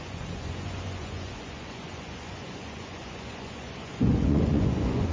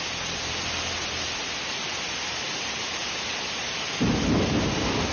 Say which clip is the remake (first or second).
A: first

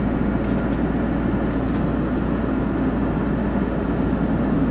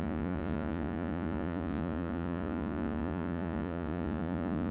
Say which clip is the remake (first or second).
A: second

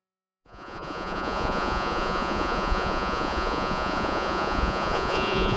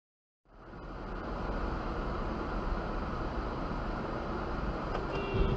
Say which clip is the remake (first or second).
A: first